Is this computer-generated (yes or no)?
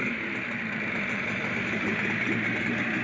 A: no